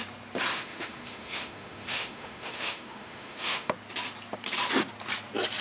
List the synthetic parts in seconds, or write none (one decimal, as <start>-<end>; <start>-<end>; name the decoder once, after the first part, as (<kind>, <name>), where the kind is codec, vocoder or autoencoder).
0.5-3.7 (autoencoder, DAC-VAE)